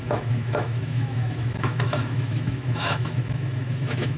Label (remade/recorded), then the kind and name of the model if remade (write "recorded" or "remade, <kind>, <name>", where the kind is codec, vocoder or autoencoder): remade, autoencoder, DAC-VAE